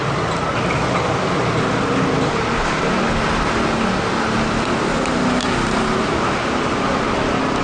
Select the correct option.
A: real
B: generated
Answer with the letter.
A